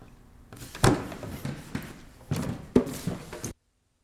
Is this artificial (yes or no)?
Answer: yes